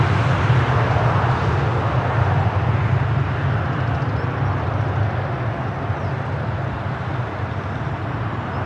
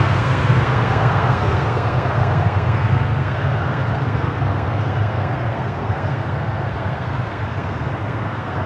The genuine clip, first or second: first